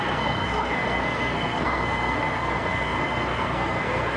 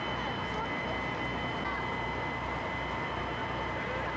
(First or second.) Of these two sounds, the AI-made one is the first